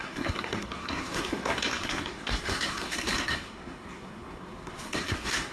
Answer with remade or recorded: remade